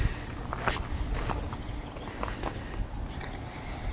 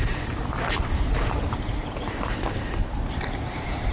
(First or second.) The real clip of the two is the first